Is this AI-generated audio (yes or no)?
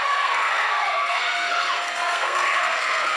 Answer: yes